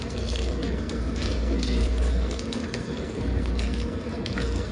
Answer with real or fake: fake